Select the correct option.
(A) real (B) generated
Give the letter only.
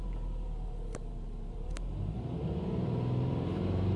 B